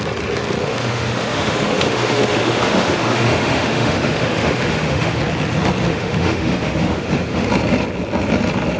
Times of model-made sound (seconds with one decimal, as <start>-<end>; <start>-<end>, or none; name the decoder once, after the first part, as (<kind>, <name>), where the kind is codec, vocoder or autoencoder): 0.6-5.2 (autoencoder, DAC-VAE); 5.9-7.5